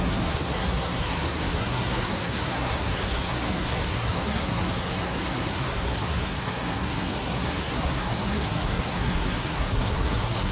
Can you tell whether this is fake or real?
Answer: fake